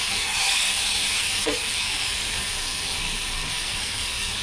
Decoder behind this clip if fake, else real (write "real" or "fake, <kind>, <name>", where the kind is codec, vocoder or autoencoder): fake, codec, SNAC